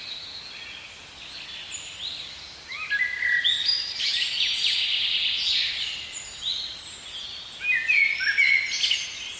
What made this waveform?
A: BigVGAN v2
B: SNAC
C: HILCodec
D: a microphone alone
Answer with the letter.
D